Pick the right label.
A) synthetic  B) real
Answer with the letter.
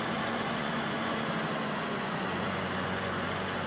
A